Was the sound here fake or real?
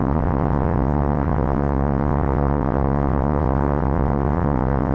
fake